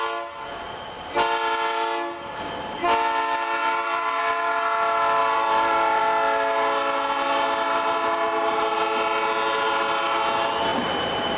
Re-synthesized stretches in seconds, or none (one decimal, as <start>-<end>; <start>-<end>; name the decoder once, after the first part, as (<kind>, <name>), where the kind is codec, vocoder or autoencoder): 3.6-4.2 (vocoder, BigVGAN v2); 5.2-6.0; 10.7-11.4